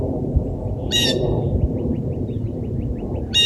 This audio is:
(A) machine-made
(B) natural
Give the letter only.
A